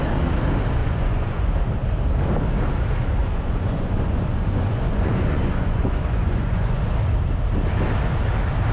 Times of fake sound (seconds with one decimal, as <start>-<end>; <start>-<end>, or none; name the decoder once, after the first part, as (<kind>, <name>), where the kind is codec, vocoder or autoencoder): 0.8-1.5 (vocoder, Vocos); 3.2-6.8

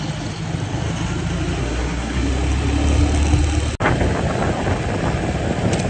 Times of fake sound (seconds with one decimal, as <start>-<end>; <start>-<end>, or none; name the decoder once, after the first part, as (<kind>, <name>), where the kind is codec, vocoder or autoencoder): 1.6-2.3 (codec, SNAC)

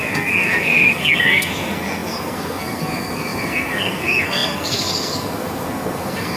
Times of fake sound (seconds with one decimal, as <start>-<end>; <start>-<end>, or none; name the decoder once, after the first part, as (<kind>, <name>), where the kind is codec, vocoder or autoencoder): 0.0-6.4 (codec, SNAC)

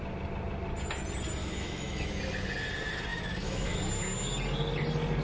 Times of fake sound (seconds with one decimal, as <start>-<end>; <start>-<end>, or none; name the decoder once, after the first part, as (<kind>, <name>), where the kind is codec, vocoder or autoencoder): 1.4-2.2 (autoencoder, DAC-VAE); 3.1-3.8

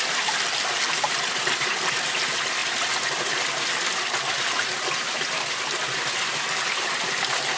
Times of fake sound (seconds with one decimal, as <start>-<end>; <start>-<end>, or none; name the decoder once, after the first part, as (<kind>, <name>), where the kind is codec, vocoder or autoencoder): none